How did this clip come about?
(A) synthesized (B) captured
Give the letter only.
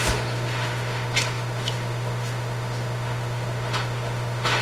A